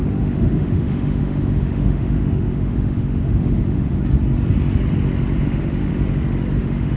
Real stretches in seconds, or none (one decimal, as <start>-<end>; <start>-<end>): 4.0-5.4; 5.9-6.6